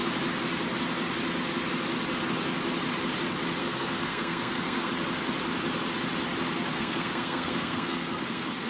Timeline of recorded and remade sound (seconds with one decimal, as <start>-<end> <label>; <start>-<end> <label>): 0.0-3.6 recorded; 3.6-4.9 remade; 4.9-6.7 recorded; 6.7-8.7 remade